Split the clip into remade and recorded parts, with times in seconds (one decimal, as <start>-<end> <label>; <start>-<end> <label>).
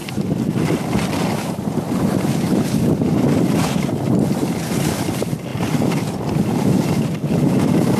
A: 0.0-3.3 remade; 3.3-5.5 recorded; 5.5-6.2 remade; 6.2-8.0 recorded